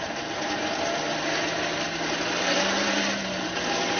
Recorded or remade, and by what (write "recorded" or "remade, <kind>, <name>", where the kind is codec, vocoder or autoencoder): remade, vocoder, BigVGAN v2